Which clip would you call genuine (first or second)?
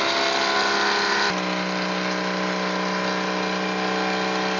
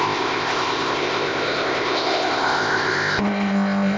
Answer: first